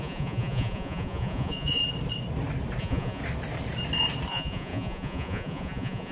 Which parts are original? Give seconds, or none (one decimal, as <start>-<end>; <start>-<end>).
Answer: 1.8-2.8; 3.2-4.3